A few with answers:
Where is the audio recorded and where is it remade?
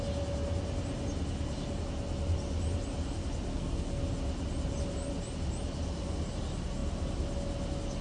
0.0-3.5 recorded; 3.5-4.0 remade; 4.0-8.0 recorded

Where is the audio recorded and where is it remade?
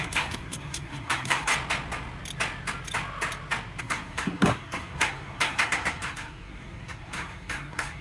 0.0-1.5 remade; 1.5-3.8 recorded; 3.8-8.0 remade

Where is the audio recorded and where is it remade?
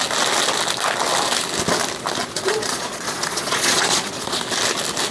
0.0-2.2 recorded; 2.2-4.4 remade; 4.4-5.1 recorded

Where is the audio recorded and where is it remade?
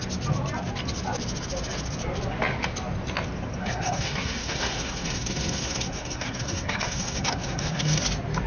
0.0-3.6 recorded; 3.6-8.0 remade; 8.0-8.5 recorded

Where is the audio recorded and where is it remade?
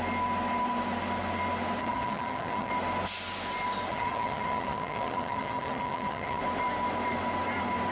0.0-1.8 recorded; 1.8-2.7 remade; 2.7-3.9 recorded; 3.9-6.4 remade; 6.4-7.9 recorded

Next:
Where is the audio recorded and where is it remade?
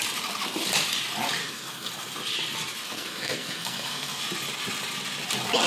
0.0-1.4 recorded; 1.4-1.9 remade; 1.9-2.8 recorded; 2.8-4.2 remade; 4.2-5.7 recorded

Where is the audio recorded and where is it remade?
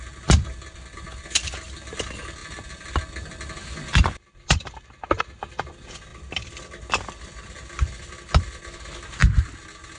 0.0-10.0 recorded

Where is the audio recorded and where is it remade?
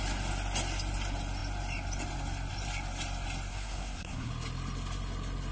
0.0-3.5 recorded; 3.5-4.3 remade; 4.3-5.5 recorded